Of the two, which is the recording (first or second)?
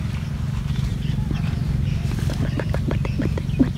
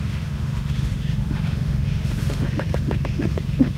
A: first